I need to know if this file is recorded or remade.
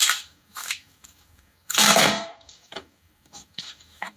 remade